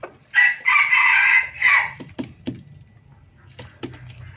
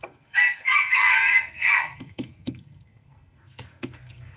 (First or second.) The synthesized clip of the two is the second